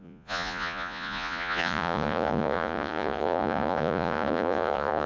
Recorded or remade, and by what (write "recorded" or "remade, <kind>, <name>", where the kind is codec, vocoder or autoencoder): remade, vocoder, Vocos